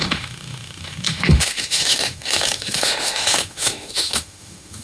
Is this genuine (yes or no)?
no